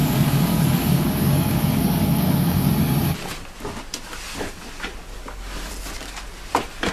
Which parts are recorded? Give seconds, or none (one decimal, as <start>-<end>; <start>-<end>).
2.7-5.1; 5.7-6.9